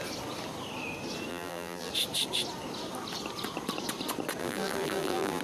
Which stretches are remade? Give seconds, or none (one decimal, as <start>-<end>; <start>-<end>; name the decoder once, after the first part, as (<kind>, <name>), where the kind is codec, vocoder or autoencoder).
1.3-1.9 (vocoder, BigVGAN v2); 4.4-5.4